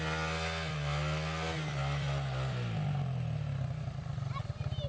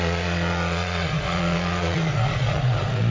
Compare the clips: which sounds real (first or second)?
first